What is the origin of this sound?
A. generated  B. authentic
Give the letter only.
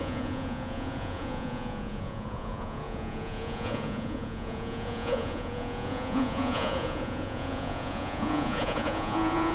A